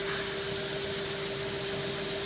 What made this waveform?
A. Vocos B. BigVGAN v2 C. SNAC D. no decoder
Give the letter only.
D